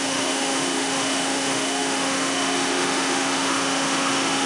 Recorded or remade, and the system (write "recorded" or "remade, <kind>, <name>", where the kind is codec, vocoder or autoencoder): remade, autoencoder, DAC-VAE